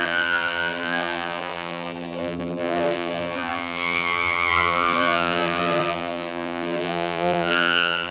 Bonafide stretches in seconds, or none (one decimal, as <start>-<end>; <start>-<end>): none